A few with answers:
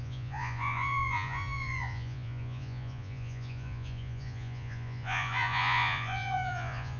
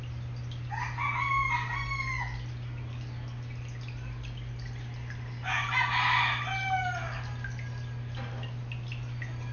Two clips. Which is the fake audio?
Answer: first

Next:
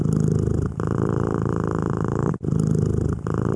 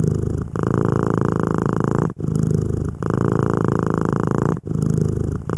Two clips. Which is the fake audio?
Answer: first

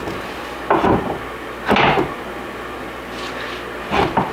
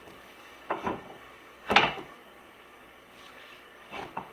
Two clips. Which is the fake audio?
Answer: second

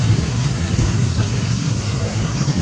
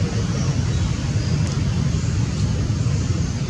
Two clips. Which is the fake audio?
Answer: first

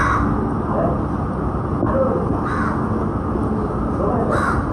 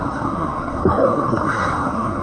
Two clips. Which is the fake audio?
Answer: second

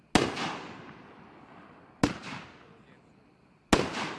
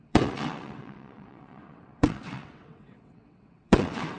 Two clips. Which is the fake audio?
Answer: second